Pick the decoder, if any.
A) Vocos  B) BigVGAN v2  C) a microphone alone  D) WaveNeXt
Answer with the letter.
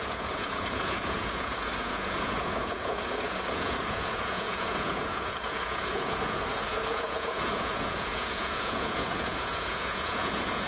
A